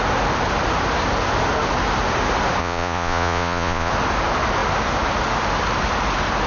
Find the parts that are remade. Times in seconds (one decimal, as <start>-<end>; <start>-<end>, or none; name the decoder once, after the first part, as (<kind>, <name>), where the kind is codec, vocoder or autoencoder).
2.6-3.9 (vocoder, Vocos)